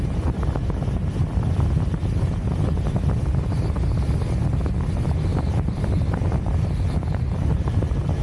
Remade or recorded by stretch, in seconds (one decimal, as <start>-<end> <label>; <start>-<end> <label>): 0.0-5.3 recorded; 5.3-8.2 remade